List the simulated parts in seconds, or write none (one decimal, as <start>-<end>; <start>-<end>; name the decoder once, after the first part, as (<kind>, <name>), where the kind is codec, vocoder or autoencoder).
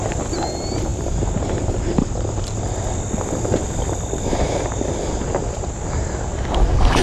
0.9-2.7 (vocoder, BigVGAN v2)